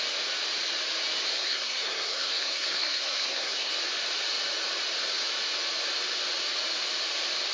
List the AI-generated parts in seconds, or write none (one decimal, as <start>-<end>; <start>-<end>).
1.3-3.7